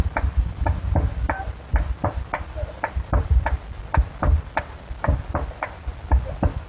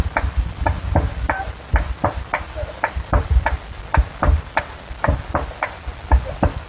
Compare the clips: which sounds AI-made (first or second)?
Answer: first